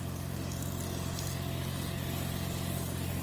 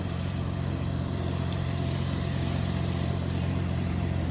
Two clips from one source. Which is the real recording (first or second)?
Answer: first